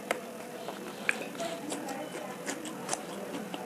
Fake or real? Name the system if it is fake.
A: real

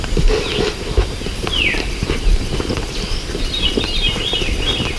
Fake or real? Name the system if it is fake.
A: fake, vocoder, BigVGAN v2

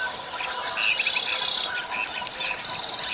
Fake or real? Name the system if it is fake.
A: real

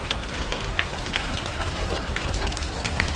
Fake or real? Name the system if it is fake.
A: fake, codec, SNAC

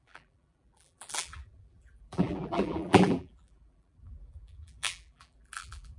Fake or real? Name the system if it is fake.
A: fake, vocoder, BigVGAN v2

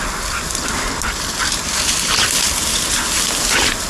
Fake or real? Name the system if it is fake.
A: real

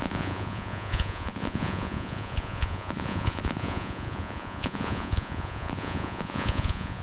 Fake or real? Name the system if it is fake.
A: fake, vocoder, Vocos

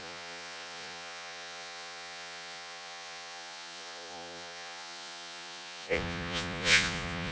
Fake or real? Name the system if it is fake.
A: fake, vocoder, Vocos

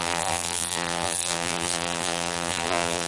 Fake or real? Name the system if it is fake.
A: fake, vocoder, BigVGAN v2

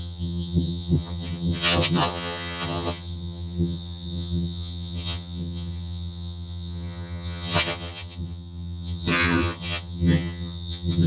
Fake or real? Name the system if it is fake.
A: fake, vocoder, HiFi-GAN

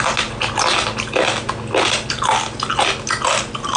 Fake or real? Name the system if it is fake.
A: real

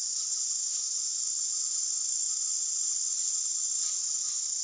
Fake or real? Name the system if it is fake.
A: fake, vocoder, BigVGAN v2